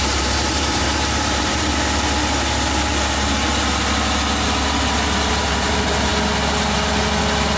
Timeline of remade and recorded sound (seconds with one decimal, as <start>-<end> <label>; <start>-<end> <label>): 0.0-1.7 remade; 1.7-5.3 recorded; 5.3-6.1 remade; 6.1-7.6 recorded